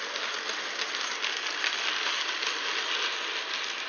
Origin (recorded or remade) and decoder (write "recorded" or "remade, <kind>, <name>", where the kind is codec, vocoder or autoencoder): recorded